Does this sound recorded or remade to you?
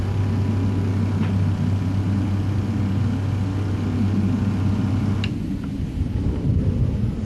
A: recorded